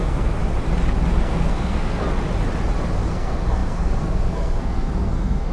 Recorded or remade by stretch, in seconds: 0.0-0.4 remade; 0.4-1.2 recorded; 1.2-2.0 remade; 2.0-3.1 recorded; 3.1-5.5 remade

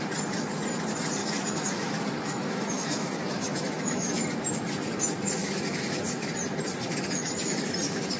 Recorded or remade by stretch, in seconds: 0.0-1.2 recorded; 1.2-4.2 remade; 4.2-5.4 recorded; 5.4-6.3 remade; 6.3-6.8 recorded; 6.8-7.6 remade; 7.6-8.2 recorded

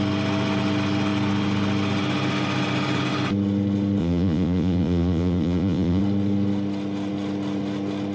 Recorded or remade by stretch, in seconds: 0.0-4.0 recorded; 4.0-6.0 remade; 6.0-8.1 recorded

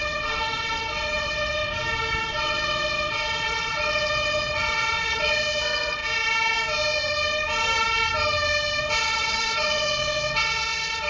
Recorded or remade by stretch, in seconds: 0.0-1.6 remade; 1.6-2.3 recorded; 2.3-6.0 remade; 6.0-8.8 recorded; 8.8-11.1 remade

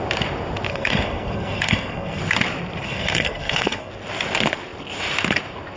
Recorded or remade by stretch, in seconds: 0.0-0.7 recorded; 0.7-2.2 remade; 2.2-2.8 recorded; 2.8-3.9 remade; 3.9-5.8 recorded

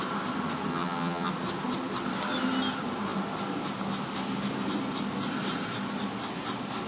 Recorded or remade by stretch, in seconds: 0.0-0.7 recorded; 0.7-1.3 remade; 1.3-6.9 recorded